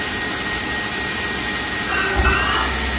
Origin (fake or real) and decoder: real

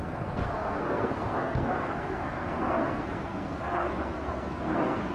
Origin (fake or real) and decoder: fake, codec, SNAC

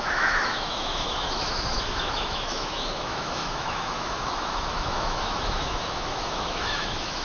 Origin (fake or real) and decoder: fake, autoencoder, DAC-VAE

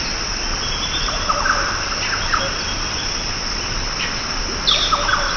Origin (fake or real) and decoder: real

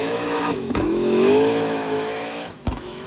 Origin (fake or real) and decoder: fake, autoencoder, DAC-VAE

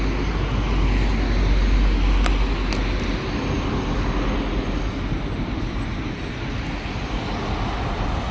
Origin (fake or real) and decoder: real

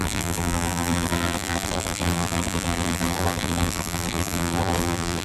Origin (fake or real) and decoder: fake, vocoder, BigVGAN v2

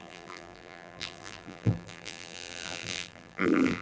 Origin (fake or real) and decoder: fake, vocoder, BigVGAN v2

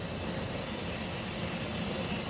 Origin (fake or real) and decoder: real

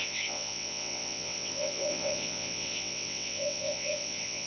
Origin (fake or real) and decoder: fake, vocoder, WaveNeXt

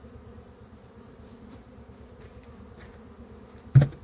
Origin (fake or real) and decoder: real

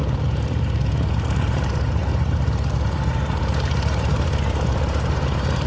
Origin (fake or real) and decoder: fake, vocoder, BigVGAN v2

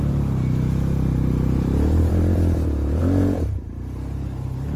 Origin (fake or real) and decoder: fake, vocoder, BigVGAN v2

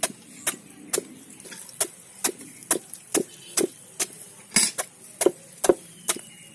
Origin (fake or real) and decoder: real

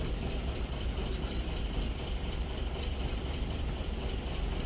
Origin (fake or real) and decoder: real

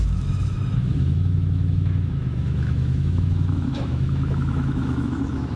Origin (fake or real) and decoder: fake, autoencoder, DAC-VAE